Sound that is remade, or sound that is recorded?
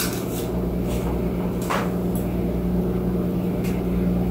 recorded